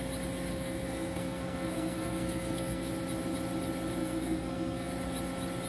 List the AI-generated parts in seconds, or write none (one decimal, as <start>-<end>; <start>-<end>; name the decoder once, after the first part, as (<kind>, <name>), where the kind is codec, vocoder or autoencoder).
0.5-2.9 (codec, SNAC); 4.0-4.9